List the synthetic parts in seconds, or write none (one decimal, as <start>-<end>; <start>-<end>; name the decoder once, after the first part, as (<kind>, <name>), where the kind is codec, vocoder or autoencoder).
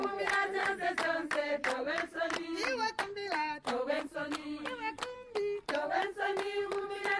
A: 0.6-4.0 (vocoder, BigVGAN v2)